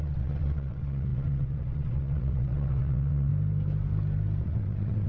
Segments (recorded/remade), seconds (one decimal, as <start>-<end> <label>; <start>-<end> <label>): 0.0-3.3 remade; 3.3-4.4 recorded; 4.4-5.1 remade